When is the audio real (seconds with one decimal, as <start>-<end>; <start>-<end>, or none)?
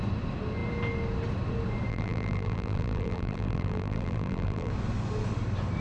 0.0-1.9; 4.7-5.8